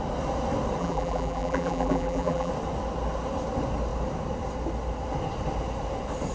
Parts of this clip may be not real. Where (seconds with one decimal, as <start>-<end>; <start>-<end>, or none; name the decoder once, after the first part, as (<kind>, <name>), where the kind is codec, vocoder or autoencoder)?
0.8-2.5 (vocoder, BigVGAN v2)